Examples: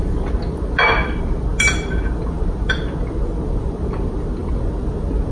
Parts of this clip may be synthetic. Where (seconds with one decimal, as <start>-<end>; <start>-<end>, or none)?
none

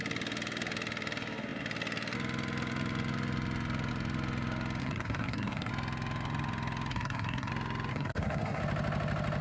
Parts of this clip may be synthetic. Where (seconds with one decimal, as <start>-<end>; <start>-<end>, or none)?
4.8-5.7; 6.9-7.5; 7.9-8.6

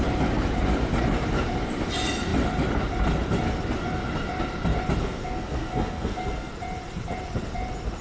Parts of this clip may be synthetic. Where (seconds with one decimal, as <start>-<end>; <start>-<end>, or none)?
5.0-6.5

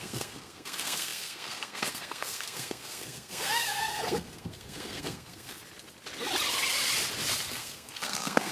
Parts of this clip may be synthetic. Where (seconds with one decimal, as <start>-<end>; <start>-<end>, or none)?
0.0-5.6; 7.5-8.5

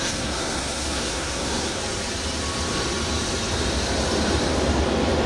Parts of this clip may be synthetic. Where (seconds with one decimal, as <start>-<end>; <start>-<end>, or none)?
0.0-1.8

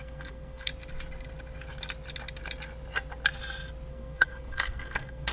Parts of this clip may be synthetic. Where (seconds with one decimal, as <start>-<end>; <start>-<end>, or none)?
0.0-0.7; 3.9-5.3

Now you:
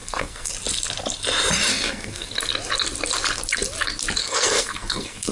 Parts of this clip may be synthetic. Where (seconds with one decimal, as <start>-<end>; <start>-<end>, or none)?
0.0-0.5; 1.7-2.3; 4.2-5.3

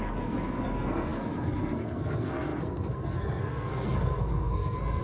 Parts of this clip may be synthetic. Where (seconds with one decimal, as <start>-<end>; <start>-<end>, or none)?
0.0-5.0